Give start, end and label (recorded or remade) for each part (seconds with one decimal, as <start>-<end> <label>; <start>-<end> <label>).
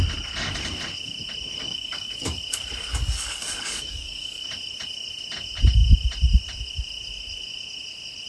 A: 0.0-1.6 recorded; 1.6-2.4 remade; 2.4-2.9 recorded; 2.9-4.5 remade; 4.5-8.3 recorded